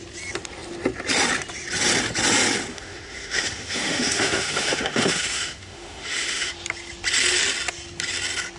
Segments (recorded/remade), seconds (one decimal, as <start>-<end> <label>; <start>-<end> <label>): 0.0-2.7 recorded; 2.7-6.5 remade; 6.5-8.6 recorded